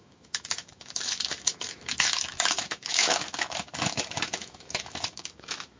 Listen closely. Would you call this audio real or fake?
fake